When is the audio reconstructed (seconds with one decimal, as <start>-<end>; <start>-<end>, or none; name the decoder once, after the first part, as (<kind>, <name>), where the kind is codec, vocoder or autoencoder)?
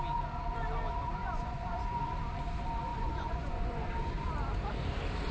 1.2-2.0 (vocoder, Vocos); 2.9-3.9